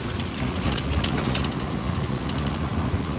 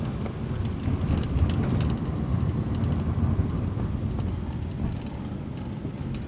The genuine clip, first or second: second